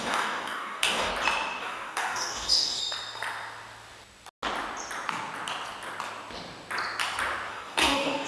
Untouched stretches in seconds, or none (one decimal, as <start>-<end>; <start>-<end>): 1.1-1.6; 2.8-7.5